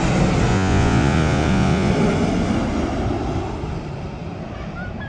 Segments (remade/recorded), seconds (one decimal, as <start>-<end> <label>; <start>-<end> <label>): 0.0-0.5 recorded; 0.5-1.9 remade; 1.9-5.1 recorded